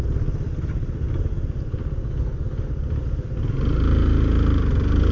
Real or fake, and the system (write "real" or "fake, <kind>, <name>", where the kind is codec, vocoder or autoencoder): real